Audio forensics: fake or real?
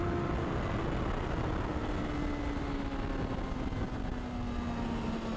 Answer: real